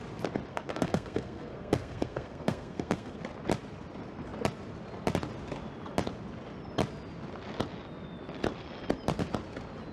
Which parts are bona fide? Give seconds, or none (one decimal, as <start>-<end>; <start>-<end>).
0.0-0.5; 3.2-9.9